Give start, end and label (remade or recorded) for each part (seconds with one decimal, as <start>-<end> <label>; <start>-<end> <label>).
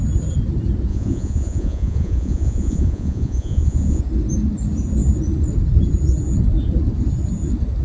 0.0-0.9 recorded; 0.9-4.0 remade; 4.0-7.8 recorded